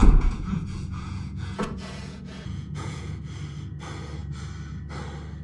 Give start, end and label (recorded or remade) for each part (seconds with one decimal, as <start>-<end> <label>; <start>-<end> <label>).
0.0-3.2 remade; 3.2-5.4 recorded